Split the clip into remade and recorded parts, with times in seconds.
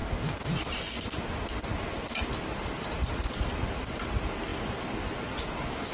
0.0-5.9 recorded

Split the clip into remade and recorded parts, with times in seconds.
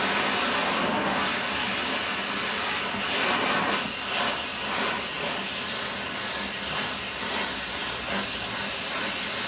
0.0-9.5 recorded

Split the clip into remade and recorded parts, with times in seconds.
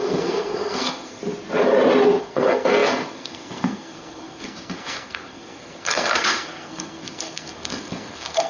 0.0-1.2 remade; 1.2-2.2 recorded; 2.2-8.5 remade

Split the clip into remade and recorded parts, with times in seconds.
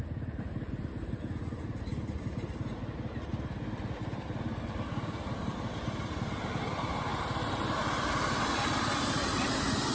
0.0-9.9 recorded